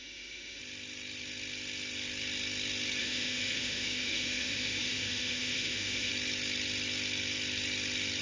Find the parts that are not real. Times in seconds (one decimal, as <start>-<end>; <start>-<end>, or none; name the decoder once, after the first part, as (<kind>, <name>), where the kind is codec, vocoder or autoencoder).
0.0-0.6 (autoencoder, DAC-VAE); 3.0-6.1